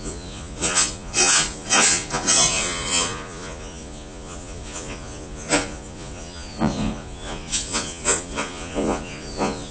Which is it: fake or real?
fake